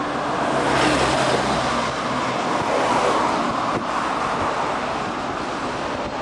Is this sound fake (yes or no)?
no